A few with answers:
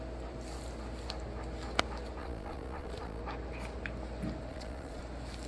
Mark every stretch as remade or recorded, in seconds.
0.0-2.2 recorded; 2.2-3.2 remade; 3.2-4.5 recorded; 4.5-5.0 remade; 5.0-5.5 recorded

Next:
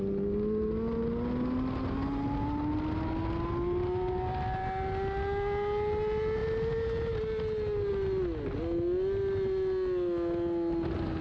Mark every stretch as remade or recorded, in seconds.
0.0-11.2 recorded

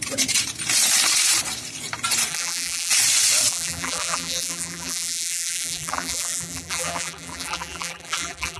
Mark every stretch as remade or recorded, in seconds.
0.0-2.3 recorded; 2.3-2.9 remade; 2.9-3.5 recorded; 3.5-8.6 remade